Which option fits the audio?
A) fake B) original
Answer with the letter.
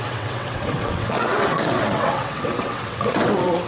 A